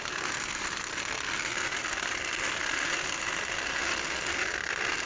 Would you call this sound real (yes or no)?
yes